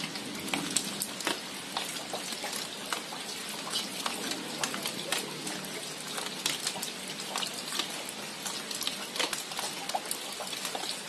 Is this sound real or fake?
real